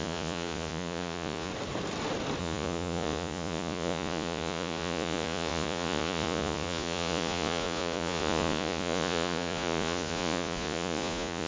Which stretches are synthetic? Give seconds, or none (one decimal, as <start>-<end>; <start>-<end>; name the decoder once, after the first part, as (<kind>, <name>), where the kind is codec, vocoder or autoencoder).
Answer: 0.0-1.5 (vocoder, Vocos); 2.4-11.5